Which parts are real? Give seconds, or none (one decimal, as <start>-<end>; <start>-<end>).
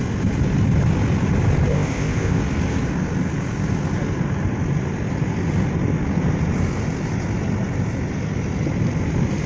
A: 0.0-1.7; 2.4-9.5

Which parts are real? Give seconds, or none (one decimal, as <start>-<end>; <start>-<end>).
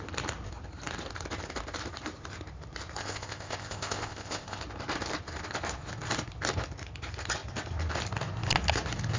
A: 0.0-3.0; 4.6-9.2